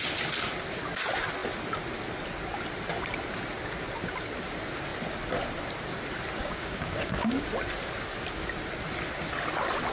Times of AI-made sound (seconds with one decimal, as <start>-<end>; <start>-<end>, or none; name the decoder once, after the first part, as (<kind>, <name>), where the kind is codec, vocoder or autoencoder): 6.4-7.5 (codec, DAC)